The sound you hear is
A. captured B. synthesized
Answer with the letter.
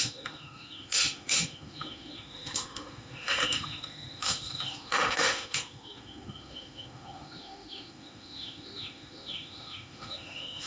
B